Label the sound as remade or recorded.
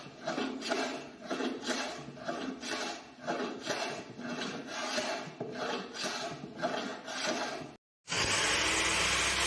recorded